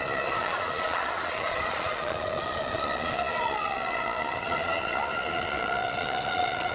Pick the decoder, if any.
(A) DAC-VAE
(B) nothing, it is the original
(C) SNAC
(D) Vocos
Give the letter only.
D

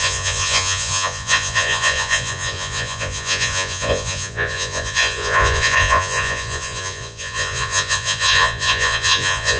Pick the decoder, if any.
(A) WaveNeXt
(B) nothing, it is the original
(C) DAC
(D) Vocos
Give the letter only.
D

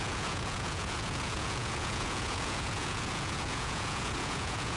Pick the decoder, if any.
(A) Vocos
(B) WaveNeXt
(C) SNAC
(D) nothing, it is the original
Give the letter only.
A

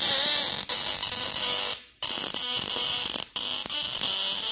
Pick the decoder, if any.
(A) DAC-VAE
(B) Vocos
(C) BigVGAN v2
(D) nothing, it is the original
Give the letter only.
D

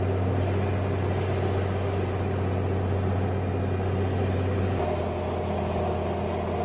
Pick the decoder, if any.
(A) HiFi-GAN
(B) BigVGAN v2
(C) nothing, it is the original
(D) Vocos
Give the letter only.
C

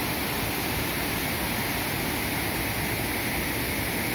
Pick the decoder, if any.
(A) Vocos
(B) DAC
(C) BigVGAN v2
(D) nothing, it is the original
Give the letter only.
D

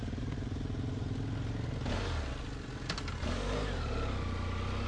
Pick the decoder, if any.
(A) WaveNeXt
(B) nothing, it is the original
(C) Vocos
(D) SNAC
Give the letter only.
B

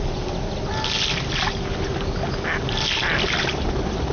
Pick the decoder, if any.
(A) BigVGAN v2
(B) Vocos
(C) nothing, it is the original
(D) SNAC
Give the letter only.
C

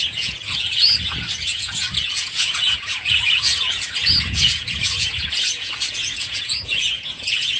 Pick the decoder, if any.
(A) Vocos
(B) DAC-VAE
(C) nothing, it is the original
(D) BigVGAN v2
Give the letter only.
A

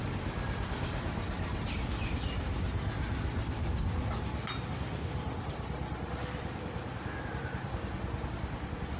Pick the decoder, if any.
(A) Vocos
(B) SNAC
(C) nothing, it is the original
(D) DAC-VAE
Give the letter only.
C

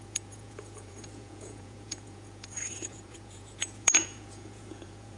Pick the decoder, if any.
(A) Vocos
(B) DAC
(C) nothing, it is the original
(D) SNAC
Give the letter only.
A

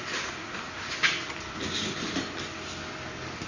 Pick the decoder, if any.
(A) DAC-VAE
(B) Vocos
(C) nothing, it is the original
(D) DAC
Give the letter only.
C